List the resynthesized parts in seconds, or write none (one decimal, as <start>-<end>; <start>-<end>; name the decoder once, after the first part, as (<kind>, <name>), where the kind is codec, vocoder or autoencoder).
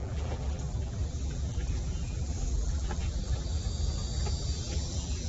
0.0-3.6 (vocoder, BigVGAN v2); 4.3-5.3